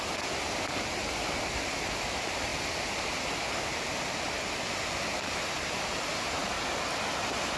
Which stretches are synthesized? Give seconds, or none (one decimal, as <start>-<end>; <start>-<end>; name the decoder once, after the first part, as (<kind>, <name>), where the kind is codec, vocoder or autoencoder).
none